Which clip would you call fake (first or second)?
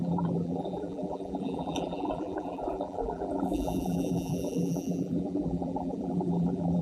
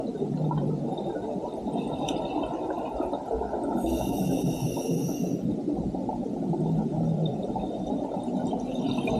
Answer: first